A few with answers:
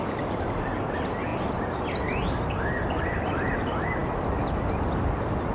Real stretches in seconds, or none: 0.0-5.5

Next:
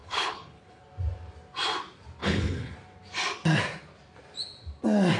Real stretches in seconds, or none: 0.8-2.2; 2.7-5.2

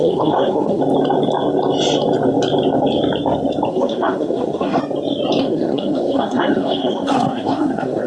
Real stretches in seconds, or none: 0.8-3.7; 4.8-5.4